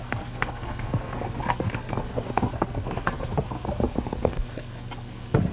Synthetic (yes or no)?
yes